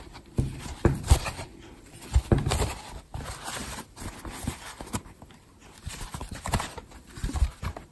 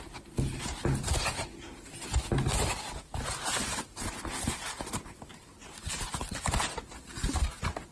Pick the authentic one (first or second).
second